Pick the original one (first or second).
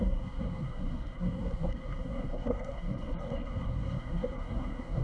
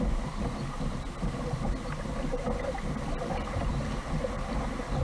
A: second